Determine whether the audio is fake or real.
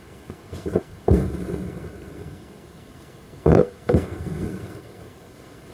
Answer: fake